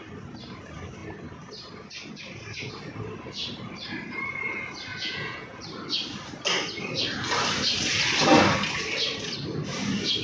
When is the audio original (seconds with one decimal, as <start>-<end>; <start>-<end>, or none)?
0.0-4.9; 5.6-10.2